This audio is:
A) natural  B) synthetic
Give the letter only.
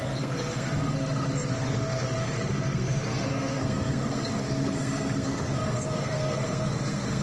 B